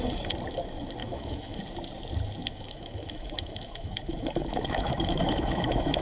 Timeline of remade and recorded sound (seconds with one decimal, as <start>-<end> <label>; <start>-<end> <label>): 0.0-1.0 recorded; 1.0-1.6 remade; 1.6-2.5 recorded; 2.5-6.0 remade